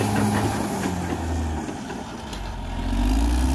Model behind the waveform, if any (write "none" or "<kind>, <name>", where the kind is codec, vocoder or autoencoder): none